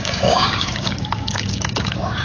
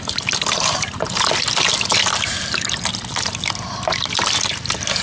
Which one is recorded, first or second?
second